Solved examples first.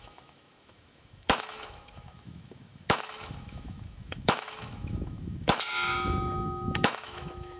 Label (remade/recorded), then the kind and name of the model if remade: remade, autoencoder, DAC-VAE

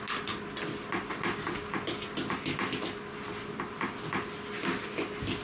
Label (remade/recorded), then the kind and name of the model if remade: recorded